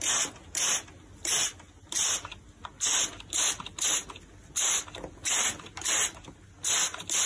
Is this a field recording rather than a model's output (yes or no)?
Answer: yes